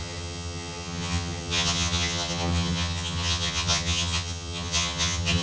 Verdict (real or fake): fake